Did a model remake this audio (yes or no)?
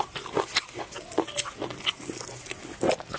no